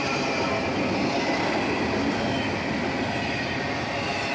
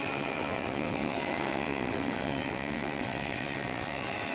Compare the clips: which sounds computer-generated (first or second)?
second